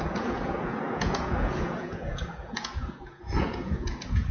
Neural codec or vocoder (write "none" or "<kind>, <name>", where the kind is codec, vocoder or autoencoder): vocoder, Vocos